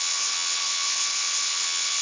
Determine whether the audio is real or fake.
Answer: fake